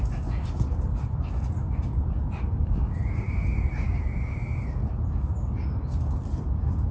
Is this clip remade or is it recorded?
recorded